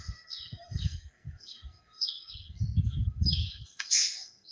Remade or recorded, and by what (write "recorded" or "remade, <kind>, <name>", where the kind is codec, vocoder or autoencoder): remade, codec, SNAC